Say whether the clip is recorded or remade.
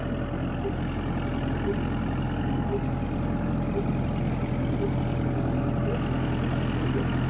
recorded